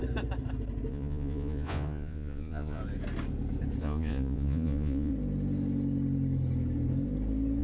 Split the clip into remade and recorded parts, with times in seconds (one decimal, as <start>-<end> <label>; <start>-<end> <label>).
0.0-0.9 recorded; 0.9-2.8 remade; 2.8-3.8 recorded; 3.8-5.1 remade; 5.1-7.6 recorded